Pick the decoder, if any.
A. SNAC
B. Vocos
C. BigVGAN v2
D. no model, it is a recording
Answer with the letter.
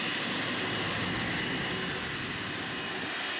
D